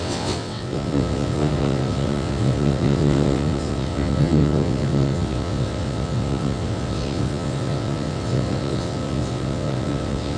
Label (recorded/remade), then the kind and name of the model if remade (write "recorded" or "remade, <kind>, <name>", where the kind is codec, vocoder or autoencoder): remade, vocoder, WaveNeXt